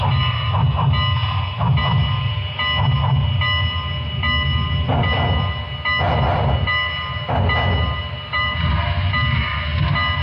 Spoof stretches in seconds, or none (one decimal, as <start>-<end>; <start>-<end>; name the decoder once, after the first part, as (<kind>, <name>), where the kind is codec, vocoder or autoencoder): 8.3-9.1 (vocoder, BigVGAN v2)